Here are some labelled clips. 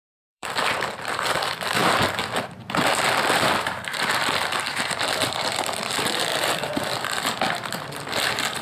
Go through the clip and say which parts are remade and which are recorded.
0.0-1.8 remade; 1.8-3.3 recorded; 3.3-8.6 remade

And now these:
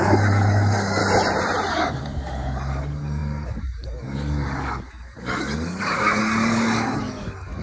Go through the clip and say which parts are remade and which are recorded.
0.0-1.0 remade; 1.0-1.7 recorded; 1.7-7.6 remade

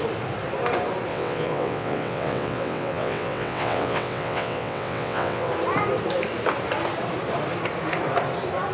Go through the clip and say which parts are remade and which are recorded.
0.0-1.1 recorded; 1.1-5.5 remade; 5.5-8.7 recorded

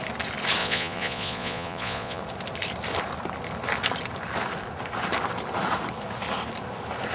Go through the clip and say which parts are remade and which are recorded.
0.0-0.6 recorded; 0.6-2.2 remade; 2.2-7.1 recorded

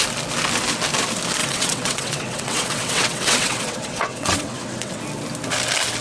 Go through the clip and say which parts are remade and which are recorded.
0.0-1.4 recorded; 1.4-5.0 remade; 5.0-6.0 recorded